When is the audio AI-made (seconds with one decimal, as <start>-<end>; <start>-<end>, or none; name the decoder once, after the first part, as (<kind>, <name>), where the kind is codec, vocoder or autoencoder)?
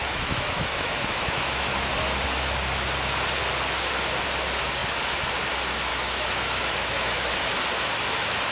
0.0-1.9 (autoencoder, DAC-VAE); 5.9-7.5